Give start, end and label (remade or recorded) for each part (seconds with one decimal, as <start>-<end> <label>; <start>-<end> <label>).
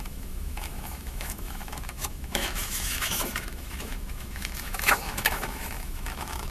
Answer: 0.0-6.5 remade